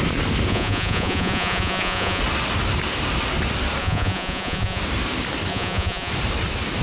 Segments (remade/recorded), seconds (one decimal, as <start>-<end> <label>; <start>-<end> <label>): 0.0-0.5 recorded; 0.5-2.2 remade; 2.2-3.8 recorded; 3.8-4.8 remade; 4.8-5.5 recorded; 5.5-6.1 remade; 6.1-6.8 recorded